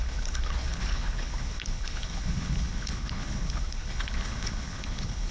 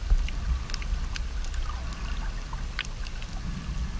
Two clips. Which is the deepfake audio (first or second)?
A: first